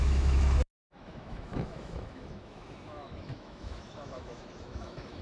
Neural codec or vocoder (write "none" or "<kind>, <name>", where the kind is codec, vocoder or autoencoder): autoencoder, DAC-VAE